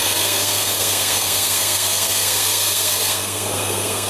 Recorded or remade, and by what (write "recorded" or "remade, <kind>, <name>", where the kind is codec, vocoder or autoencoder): remade, codec, SNAC